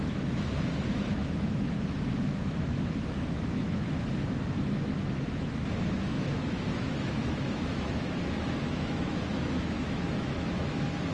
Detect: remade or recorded remade